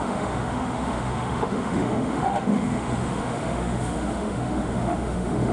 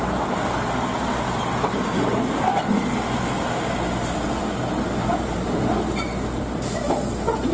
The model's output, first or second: first